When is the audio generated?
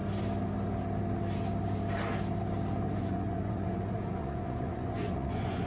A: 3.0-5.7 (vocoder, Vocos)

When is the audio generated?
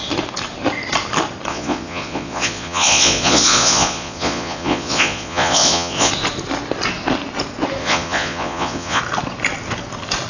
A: 1.5-6.1 (vocoder, Vocos); 7.8-9.0